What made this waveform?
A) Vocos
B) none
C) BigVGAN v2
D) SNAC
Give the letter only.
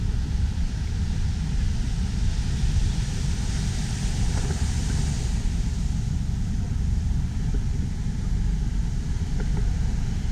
C